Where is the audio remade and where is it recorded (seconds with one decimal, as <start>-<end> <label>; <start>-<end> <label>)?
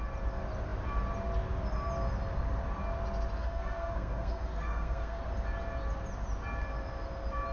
0.0-3.4 recorded; 3.4-5.2 remade; 5.2-7.5 recorded